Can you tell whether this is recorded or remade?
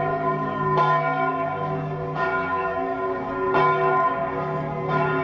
remade